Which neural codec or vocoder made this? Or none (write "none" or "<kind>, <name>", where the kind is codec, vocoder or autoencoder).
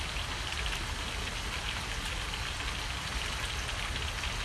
none